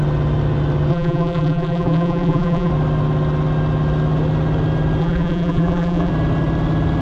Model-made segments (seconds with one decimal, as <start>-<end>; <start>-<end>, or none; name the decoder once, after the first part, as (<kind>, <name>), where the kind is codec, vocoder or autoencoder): 0.9-2.7 (vocoder, BigVGAN v2); 5.0-6.1

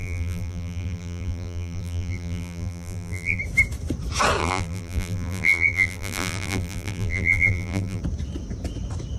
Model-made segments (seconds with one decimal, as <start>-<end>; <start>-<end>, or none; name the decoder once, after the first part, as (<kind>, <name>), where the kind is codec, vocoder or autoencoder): 0.0-3.4 (vocoder, BigVGAN v2); 4.4-8.0

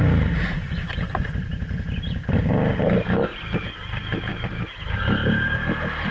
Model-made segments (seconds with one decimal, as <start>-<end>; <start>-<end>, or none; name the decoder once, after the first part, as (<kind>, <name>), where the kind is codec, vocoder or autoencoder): 4.3-5.0 (vocoder, BigVGAN v2)

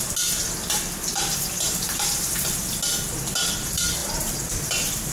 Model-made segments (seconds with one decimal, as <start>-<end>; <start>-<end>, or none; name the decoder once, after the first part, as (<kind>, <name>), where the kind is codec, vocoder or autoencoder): 0.4-2.5 (vocoder, BigVGAN v2); 4.0-5.1

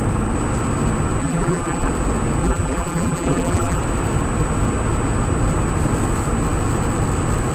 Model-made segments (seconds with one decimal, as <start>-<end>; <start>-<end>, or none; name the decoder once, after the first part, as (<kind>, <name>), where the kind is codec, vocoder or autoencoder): 1.2-1.9 (vocoder, BigVGAN v2); 2.4-3.8

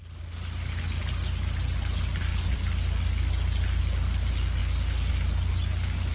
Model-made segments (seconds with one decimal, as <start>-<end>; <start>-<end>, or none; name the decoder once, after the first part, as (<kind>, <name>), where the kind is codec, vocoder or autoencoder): none

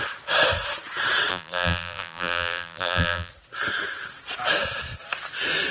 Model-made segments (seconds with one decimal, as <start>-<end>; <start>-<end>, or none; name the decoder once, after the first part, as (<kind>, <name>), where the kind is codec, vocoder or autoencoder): 1.3-3.3 (vocoder, BigVGAN v2)

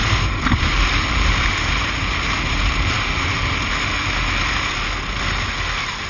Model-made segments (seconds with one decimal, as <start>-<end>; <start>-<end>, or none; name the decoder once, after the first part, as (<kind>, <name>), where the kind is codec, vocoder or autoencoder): 0.0-3.7 (vocoder, BigVGAN v2)